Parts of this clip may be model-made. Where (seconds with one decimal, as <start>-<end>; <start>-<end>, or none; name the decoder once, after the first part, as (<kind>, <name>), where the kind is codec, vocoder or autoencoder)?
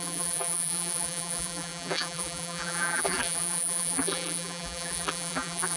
0.0-5.8 (vocoder, BigVGAN v2)